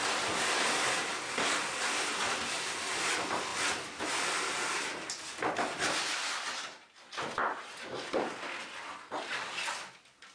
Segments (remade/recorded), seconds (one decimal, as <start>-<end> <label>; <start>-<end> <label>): 0.0-10.3 recorded